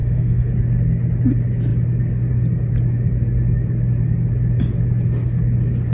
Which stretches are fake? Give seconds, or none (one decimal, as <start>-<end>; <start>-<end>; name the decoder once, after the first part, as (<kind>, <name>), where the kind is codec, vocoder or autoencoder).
0.0-0.5 (autoencoder, DAC-VAE)